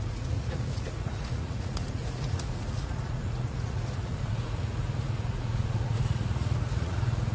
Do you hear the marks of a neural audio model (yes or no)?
yes